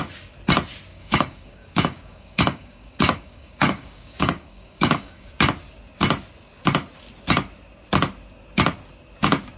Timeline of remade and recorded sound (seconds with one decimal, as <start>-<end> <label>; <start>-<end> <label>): 0.0-0.9 recorded; 0.9-5.3 remade; 5.3-9.6 recorded